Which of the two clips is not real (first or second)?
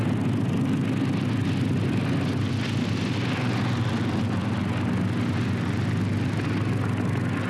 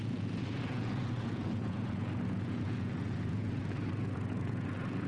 second